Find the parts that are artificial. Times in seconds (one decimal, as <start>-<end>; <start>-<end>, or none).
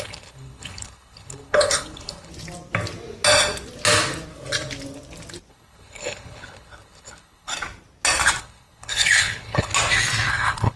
0.0-2.3; 5.5-7.5; 8.4-9.7; 10.3-10.8